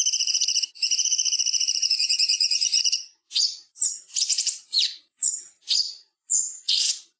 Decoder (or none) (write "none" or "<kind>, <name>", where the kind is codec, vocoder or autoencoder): vocoder, Vocos